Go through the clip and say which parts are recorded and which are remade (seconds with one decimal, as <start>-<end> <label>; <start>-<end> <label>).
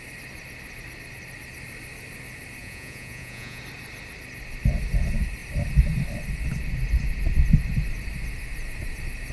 0.0-2.6 recorded; 2.6-3.6 remade; 3.6-9.3 recorded